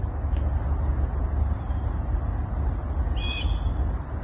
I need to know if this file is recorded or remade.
recorded